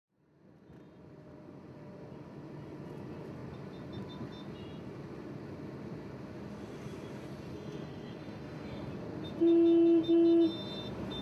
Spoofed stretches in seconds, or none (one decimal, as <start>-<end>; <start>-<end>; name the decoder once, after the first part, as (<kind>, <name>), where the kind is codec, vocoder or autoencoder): 7.5-8.9 (codec, SNAC)